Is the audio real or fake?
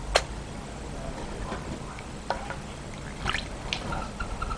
real